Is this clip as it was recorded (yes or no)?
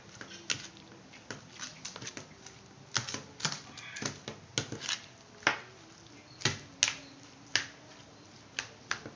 yes